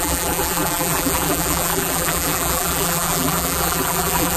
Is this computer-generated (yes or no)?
yes